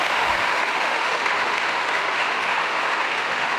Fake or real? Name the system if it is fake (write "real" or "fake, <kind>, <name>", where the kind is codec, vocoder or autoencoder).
fake, autoencoder, DAC-VAE